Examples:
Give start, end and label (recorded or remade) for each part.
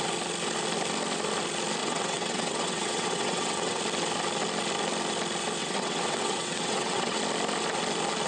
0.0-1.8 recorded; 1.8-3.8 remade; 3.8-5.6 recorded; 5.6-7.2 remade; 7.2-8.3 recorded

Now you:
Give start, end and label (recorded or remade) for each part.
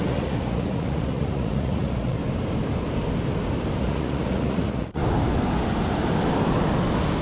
0.0-2.2 remade; 2.2-3.8 recorded; 3.8-5.0 remade; 5.0-7.2 recorded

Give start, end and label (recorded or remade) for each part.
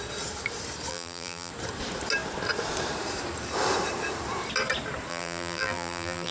0.0-0.9 recorded; 0.9-1.5 remade; 1.5-5.1 recorded; 5.1-6.3 remade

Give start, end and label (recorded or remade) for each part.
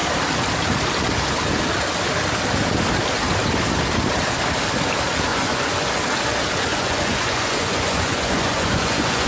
0.0-5.3 recorded; 5.3-5.9 remade; 5.9-6.7 recorded; 6.7-9.3 remade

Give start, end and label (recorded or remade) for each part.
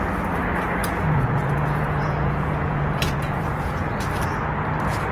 0.0-0.8 recorded; 0.8-3.9 remade; 3.9-5.1 recorded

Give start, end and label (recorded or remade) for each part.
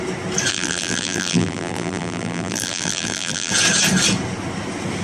0.0-0.5 recorded; 0.5-3.5 remade; 3.5-5.0 recorded